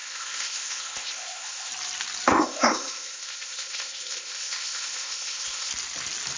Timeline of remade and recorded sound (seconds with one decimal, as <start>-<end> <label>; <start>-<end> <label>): 0.0-1.7 remade; 1.7-2.3 recorded; 2.3-5.7 remade; 5.7-6.4 recorded